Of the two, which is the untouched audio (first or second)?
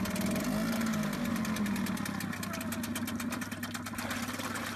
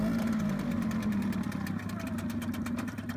first